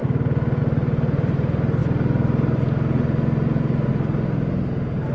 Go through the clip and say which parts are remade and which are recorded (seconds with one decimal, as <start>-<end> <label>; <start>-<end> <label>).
0.0-5.1 recorded